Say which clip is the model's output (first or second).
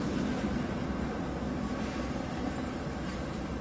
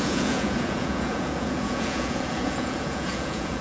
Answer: second